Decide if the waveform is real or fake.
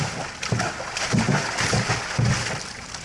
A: real